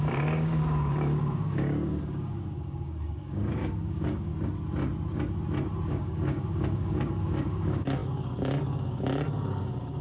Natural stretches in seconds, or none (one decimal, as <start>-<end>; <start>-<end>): 4.3-5.9